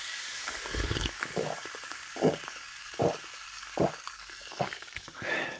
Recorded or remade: remade